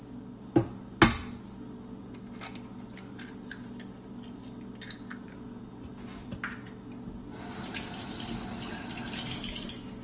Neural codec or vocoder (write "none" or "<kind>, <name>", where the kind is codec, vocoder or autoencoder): none